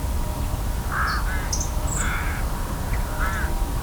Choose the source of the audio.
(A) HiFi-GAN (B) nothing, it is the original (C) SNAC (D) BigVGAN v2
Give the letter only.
B